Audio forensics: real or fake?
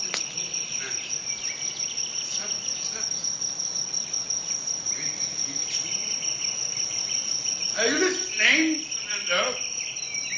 real